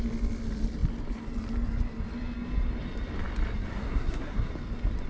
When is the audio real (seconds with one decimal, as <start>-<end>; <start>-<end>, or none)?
0.0-3.7; 4.5-5.1